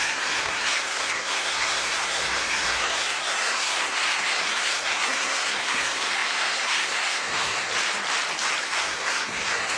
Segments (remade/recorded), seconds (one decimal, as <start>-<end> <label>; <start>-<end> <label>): 0.0-7.7 remade; 7.7-8.6 recorded; 8.6-9.8 remade

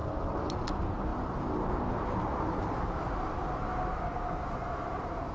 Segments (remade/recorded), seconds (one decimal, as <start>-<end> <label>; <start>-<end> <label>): 0.0-5.3 recorded

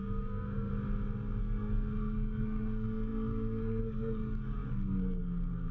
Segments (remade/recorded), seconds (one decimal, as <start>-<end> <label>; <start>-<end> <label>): 0.0-0.7 remade; 0.7-1.4 recorded; 1.4-5.7 remade